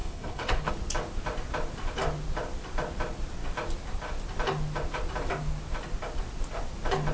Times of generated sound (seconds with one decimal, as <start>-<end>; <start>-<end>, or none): 0.0-0.7

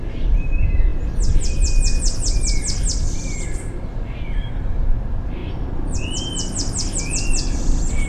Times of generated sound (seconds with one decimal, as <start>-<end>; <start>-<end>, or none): none